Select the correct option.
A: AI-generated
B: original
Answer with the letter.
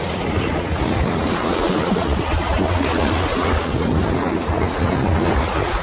A